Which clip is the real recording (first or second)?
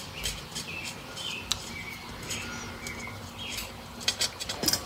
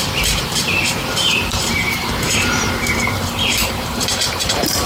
first